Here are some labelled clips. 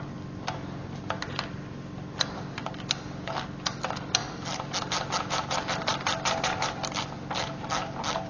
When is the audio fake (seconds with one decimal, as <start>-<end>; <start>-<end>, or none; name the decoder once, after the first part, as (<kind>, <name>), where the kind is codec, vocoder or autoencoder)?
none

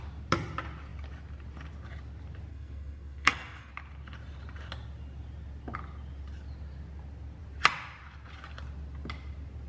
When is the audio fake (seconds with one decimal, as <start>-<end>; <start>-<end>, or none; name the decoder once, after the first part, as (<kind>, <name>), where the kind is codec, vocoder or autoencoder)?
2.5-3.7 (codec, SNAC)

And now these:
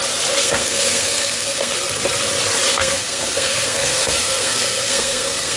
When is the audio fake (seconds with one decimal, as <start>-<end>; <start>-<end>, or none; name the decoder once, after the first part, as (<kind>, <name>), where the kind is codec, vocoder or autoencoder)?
0.4-1.7 (codec, SNAC); 2.7-5.6